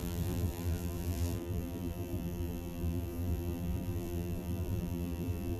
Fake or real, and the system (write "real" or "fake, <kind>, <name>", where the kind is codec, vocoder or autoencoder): fake, vocoder, BigVGAN v2